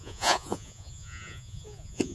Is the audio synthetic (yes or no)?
yes